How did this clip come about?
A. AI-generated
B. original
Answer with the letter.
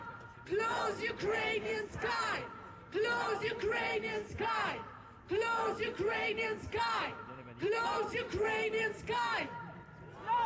A